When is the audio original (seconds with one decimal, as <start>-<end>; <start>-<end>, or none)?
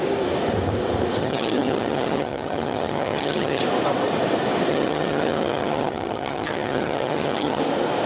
0.0-1.2; 3.6-4.7; 7.6-8.1